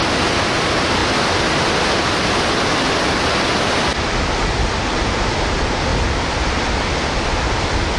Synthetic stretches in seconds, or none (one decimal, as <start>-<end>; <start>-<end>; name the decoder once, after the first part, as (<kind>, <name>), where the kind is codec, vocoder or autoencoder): 1.0-2.1 (vocoder, BigVGAN v2); 3.9-4.8